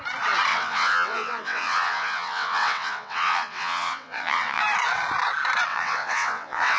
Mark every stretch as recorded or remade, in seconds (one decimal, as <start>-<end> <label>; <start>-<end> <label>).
0.0-0.5 recorded; 0.5-4.6 remade; 4.6-5.7 recorded; 5.7-6.8 remade